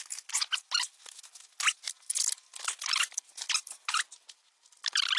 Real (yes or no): yes